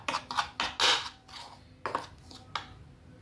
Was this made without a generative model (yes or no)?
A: yes